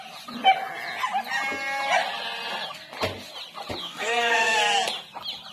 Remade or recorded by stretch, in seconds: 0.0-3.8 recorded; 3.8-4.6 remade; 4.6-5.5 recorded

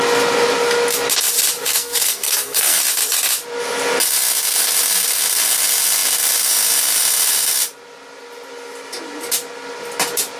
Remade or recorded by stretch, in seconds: 0.0-1.7 recorded; 1.7-2.8 remade; 2.8-10.4 recorded